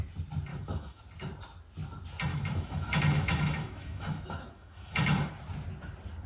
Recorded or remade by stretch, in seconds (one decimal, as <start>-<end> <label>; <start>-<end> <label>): 0.0-0.5 recorded; 0.5-1.0 remade; 1.0-2.3 recorded; 2.3-5.3 remade; 5.3-6.3 recorded